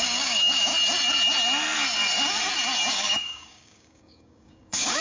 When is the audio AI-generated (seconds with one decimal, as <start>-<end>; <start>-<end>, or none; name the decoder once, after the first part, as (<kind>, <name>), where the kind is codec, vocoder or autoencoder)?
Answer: 0.0-0.7 (codec, DAC); 2.9-5.0